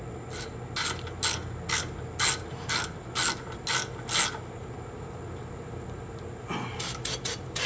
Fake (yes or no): no